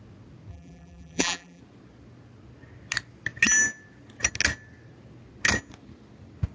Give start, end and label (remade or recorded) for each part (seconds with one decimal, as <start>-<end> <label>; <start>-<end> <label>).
0.0-0.5 recorded; 0.5-1.6 remade; 1.6-6.5 recorded